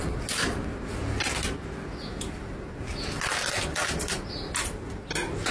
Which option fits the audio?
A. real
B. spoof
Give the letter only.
A